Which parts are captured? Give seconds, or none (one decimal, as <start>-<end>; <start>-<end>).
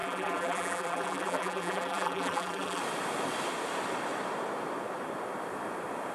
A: 2.8-6.1